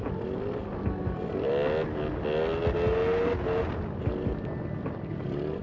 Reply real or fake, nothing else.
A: real